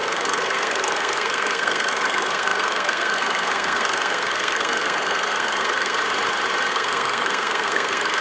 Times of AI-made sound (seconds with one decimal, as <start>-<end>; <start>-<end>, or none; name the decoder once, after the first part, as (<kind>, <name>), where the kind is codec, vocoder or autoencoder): 0.0-6.0 (codec, SNAC); 6.7-8.2